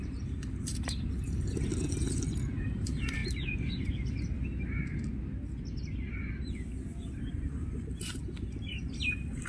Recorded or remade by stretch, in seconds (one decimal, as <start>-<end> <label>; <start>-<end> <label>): 0.0-1.7 remade; 1.7-2.6 recorded; 2.6-3.2 remade; 3.2-7.3 recorded; 7.3-8.2 remade; 8.2-8.9 recorded; 8.9-9.5 remade